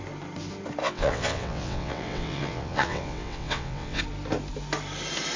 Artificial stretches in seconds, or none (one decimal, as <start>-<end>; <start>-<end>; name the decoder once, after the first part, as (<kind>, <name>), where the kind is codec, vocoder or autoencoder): 0.8-4.0 (vocoder, WaveNeXt)